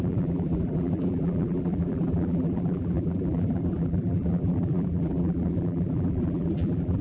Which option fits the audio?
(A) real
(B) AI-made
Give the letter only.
B